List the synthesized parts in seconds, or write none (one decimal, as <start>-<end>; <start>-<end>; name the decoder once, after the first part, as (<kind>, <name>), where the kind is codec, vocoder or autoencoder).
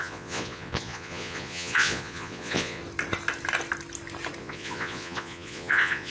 0.0-2.8 (vocoder, Vocos); 4.4-6.1